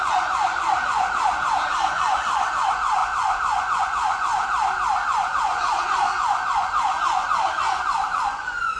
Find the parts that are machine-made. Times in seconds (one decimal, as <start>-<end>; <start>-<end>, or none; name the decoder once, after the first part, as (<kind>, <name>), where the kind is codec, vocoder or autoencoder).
0.0-4.3 (vocoder, Vocos); 5.3-8.8